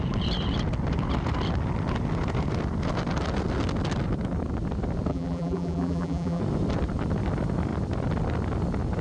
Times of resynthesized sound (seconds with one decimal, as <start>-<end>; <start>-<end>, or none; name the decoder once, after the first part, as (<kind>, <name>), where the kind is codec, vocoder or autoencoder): 5.1-6.4 (vocoder, BigVGAN v2)